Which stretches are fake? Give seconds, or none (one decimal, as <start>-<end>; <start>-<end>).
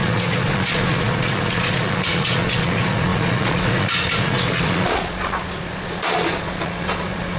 0.0-7.4